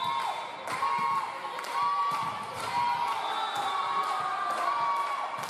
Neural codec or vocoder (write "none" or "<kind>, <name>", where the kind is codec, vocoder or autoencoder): none